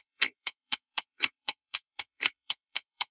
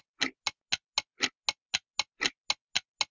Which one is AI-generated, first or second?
first